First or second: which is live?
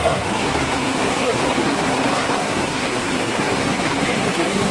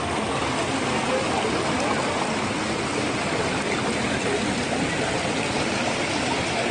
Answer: second